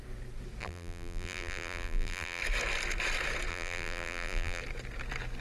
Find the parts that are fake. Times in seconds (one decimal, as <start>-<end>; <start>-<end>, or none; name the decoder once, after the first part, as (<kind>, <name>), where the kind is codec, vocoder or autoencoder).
0.6-2.4 (vocoder, BigVGAN v2); 3.5-4.6